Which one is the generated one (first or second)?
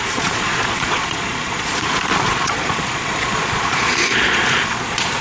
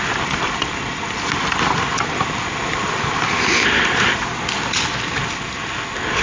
first